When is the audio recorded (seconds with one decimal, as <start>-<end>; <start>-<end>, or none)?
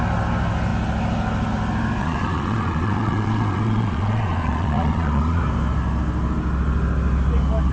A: 0.0-2.0; 5.4-7.7